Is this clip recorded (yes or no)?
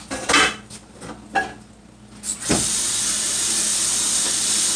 yes